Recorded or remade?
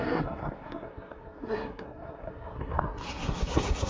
remade